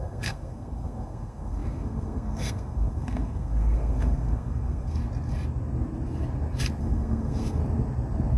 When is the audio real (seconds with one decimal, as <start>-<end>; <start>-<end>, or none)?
5.0-6.8; 7.6-8.4